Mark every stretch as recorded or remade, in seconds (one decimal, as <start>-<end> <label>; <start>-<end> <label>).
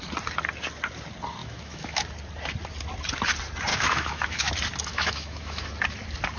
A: 0.0-1.4 recorded; 1.4-2.0 remade; 2.0-3.7 recorded; 3.7-4.5 remade; 4.5-4.9 recorded; 4.9-5.7 remade; 5.7-6.4 recorded